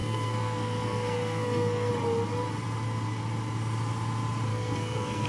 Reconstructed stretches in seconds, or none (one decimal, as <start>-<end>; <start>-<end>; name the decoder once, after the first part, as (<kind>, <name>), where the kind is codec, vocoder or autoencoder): 0.0-1.9 (codec, SNAC); 4.5-5.3

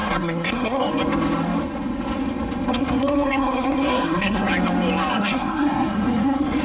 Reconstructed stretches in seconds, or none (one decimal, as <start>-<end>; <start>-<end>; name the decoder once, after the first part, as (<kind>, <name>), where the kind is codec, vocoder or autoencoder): 0.0-0.9 (codec, SNAC); 2.7-4.5; 5.1-6.6

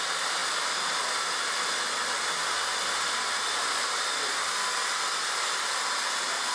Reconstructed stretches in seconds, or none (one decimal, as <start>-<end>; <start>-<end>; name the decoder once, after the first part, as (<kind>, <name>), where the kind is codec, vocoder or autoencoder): none

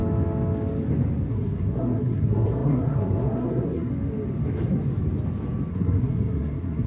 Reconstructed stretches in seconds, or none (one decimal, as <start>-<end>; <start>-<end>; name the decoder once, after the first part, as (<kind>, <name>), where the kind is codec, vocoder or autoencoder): 1.3-3.9 (codec, SNAC); 5.7-6.9

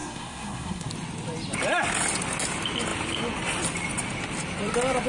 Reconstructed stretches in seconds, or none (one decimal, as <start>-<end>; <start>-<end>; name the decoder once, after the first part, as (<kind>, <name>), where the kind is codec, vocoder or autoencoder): 0.0-0.9 (codec, SNAC)

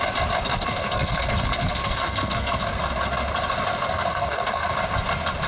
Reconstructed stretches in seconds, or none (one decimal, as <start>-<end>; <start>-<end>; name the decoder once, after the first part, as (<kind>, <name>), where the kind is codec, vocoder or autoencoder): 0.5-2.6 (codec, SNAC); 4.1-4.7

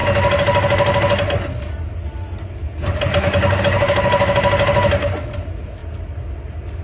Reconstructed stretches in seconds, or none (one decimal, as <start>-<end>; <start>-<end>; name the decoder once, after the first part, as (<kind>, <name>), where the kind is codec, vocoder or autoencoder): none

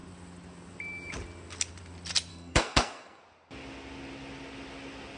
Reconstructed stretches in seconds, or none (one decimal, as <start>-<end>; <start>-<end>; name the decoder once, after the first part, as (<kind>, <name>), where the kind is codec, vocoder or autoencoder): 2.3-3.2 (codec, SNAC)